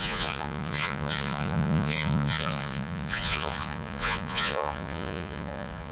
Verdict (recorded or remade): remade